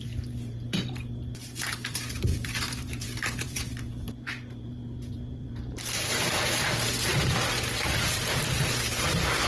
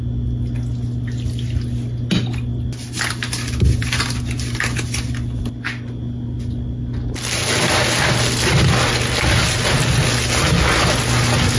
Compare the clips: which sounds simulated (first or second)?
first